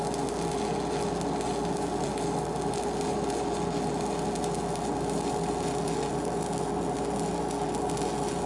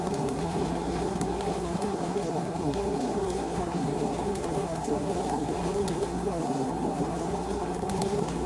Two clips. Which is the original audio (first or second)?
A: first